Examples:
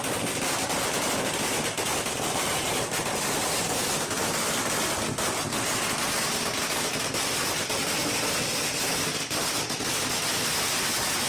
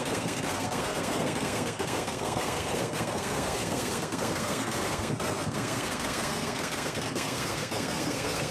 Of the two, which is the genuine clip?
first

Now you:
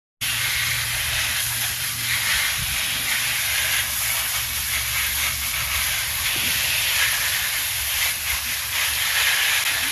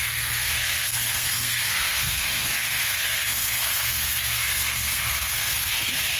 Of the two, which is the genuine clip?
first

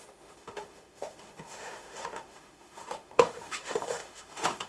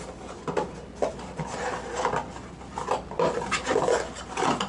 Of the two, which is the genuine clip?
second